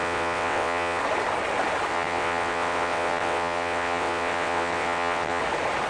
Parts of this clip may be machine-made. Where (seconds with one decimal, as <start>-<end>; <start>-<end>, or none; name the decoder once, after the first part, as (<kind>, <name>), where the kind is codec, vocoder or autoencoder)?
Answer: 0.0-1.0 (vocoder, WaveNeXt); 1.9-5.4